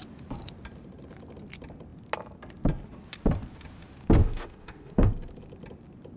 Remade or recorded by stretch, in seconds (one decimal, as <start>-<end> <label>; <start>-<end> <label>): 0.0-4.2 recorded; 4.2-5.1 remade; 5.1-6.2 recorded